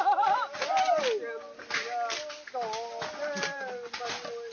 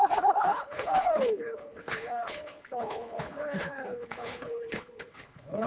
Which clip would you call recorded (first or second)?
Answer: first